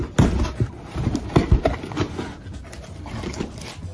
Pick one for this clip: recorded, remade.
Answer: recorded